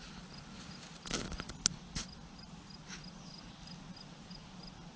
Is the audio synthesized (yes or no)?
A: no